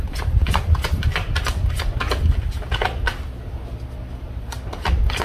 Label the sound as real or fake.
real